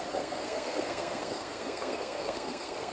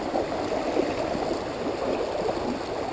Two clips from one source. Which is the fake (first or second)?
first